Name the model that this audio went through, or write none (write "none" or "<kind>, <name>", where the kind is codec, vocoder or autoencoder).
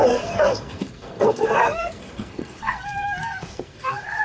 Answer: codec, SNAC